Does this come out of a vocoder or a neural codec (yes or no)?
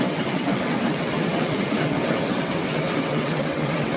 yes